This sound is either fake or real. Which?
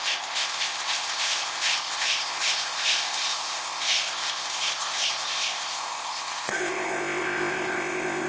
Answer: fake